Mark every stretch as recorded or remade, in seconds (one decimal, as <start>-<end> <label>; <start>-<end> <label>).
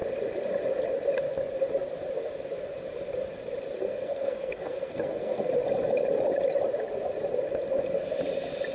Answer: 0.0-3.8 recorded; 3.8-5.5 remade; 5.5-8.7 recorded